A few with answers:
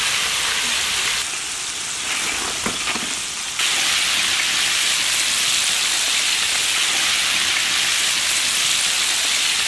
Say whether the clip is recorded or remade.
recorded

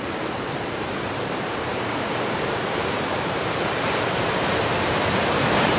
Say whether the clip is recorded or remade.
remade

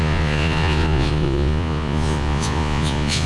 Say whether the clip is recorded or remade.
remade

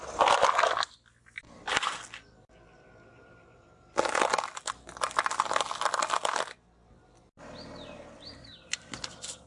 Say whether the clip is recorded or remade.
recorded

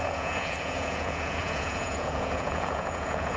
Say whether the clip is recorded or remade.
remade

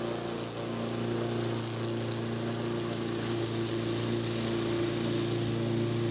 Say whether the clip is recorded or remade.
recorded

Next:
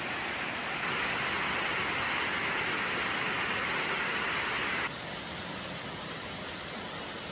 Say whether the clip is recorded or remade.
recorded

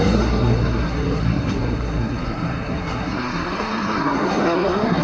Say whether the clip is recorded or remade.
remade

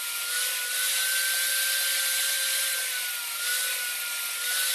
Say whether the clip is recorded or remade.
recorded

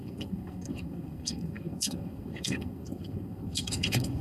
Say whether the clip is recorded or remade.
remade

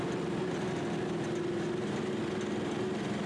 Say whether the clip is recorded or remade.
recorded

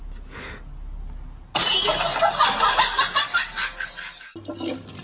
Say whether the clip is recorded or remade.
recorded